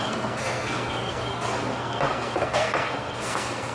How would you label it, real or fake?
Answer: fake